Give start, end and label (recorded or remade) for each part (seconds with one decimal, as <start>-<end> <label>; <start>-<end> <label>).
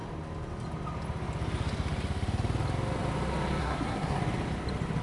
0.0-3.6 recorded; 3.6-4.2 remade; 4.2-5.0 recorded